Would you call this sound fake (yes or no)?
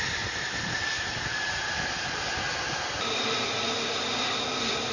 no